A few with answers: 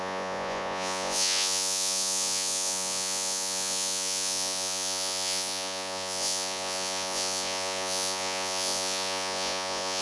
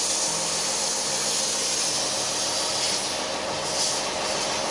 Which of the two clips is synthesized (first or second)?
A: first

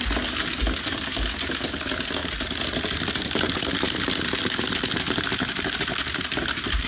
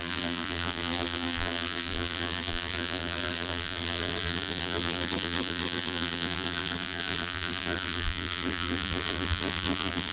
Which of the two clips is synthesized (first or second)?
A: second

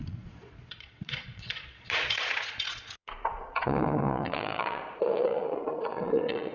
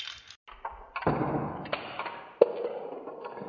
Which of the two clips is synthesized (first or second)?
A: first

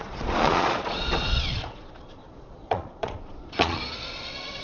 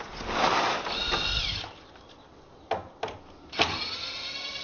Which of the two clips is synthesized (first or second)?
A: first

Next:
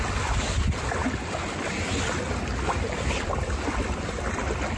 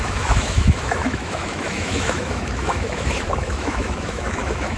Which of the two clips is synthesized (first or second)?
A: second